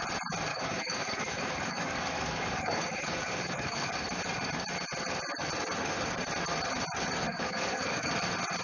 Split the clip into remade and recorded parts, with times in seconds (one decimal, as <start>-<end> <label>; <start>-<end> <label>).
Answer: 0.0-0.5 recorded; 0.5-3.9 remade; 3.9-7.3 recorded; 7.3-8.1 remade; 8.1-8.6 recorded